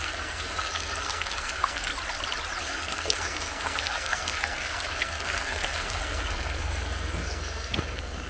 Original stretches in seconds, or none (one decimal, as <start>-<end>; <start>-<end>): 1.9-2.6